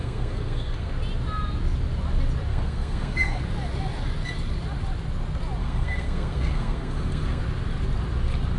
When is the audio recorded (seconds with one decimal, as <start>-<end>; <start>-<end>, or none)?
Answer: 0.9-2.5; 3.4-5.6; 7.4-8.6